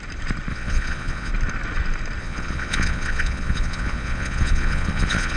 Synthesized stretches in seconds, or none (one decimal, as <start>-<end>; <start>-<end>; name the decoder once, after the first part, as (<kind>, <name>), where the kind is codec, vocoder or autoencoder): 0.5-1.3 (vocoder, Vocos); 2.2-5.4